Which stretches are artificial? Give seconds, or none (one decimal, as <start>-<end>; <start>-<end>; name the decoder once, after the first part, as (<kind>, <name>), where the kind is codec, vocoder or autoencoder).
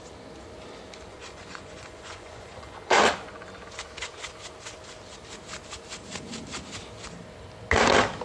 1.1-3.0 (vocoder, Vocos)